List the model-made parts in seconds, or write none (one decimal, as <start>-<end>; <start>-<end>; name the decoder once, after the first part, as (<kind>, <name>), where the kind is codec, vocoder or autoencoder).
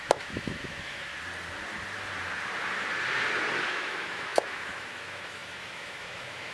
0.0-1.1 (autoencoder, DAC-VAE); 3.7-6.5